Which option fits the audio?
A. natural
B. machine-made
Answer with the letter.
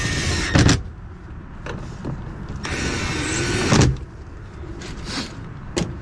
A